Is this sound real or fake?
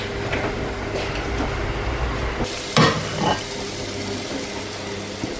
real